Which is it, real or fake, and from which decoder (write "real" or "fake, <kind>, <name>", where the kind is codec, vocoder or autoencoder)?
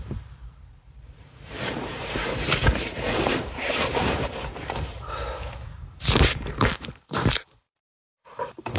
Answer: fake, vocoder, BigVGAN v2